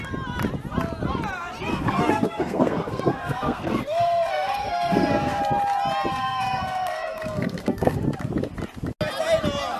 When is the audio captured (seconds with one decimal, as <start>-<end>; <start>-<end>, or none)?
0.0-1.7; 5.4-6.1; 8.0-9.8